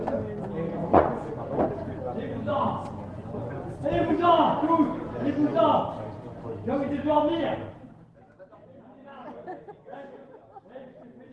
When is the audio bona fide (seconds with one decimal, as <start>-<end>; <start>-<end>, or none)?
0.0-0.8; 1.4-11.3